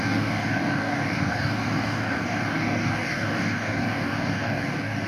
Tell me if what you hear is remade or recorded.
remade